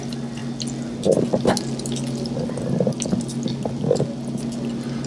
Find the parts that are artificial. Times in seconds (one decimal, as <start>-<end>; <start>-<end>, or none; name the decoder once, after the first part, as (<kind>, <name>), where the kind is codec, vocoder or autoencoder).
none